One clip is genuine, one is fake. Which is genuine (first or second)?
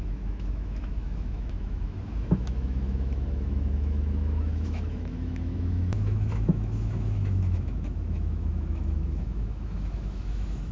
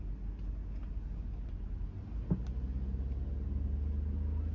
second